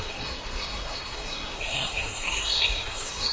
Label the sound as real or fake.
fake